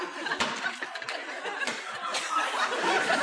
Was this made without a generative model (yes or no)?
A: no